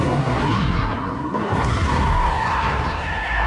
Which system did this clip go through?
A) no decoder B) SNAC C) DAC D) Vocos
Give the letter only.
B